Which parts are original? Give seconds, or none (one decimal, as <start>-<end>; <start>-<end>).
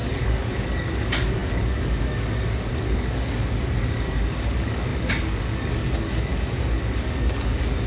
none